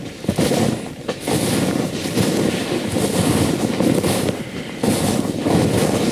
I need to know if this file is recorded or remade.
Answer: remade